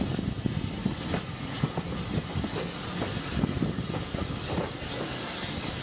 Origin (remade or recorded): recorded